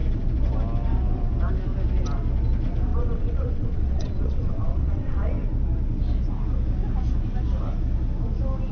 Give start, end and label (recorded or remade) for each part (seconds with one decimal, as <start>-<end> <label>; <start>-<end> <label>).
0.0-2.9 recorded; 2.9-5.3 remade; 5.3-8.7 recorded